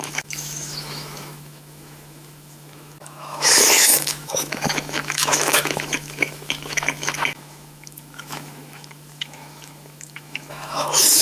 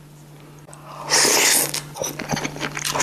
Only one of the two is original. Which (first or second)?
second